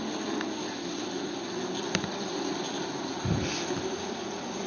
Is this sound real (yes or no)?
yes